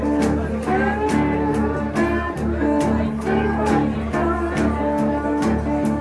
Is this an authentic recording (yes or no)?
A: yes